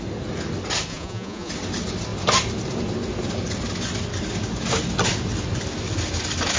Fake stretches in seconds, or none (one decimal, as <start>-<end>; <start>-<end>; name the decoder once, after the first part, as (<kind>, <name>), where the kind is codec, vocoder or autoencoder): 0.9-1.5 (vocoder, Vocos)